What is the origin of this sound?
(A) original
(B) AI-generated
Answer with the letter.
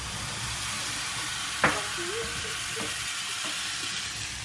A